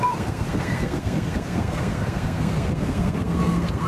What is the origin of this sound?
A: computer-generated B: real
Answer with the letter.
A